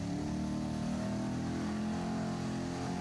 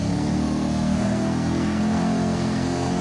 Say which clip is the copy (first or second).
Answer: second